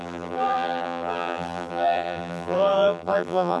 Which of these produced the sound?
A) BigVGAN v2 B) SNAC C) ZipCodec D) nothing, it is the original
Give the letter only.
A